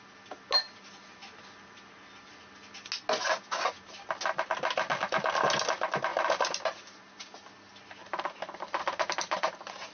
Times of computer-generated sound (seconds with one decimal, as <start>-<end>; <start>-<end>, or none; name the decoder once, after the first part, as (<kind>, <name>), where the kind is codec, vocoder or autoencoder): 6.1-7.2 (vocoder, BigVGAN v2); 8.0-9.9